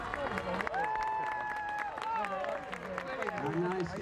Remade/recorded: recorded